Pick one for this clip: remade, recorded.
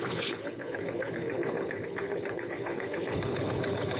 remade